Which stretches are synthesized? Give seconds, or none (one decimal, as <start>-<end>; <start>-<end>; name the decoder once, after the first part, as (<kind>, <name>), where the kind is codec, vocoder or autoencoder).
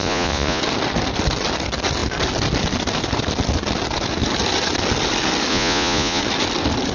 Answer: 0.0-0.6 (vocoder, Vocos); 5.5-6.2